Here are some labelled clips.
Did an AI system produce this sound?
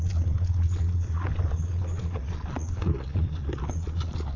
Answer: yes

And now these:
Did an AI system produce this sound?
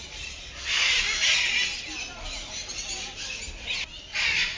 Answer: no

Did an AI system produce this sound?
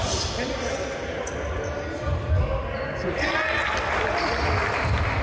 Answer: no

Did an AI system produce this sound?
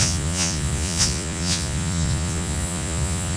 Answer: yes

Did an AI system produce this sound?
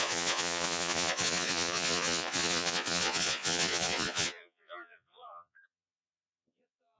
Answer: yes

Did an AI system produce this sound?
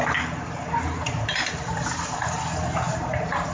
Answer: no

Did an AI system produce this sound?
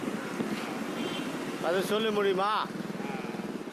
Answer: no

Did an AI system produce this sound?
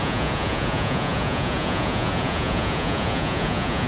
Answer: yes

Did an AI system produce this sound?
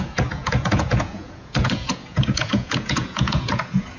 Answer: yes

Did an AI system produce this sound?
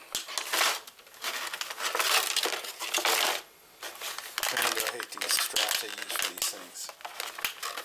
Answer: no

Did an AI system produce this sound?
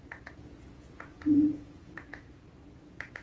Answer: yes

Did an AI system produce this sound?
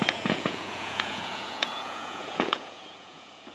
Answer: yes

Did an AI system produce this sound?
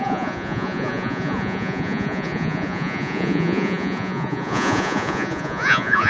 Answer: yes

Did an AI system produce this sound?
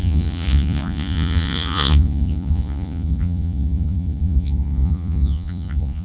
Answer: yes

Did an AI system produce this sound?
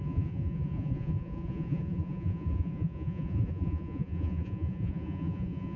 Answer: yes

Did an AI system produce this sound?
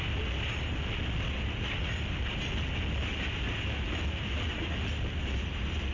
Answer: no